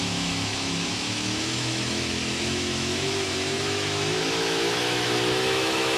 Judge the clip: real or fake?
fake